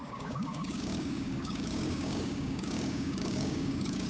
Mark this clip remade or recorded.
remade